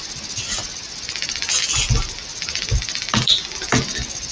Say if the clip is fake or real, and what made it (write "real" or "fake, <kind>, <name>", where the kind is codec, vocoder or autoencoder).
real